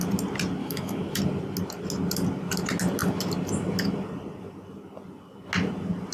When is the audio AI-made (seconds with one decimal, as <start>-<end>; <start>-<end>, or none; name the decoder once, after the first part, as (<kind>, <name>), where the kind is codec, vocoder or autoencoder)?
0.6-1.2 (autoencoder, DAC-VAE)